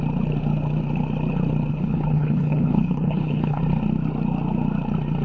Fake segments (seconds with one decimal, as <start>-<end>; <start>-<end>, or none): 1.7-3.6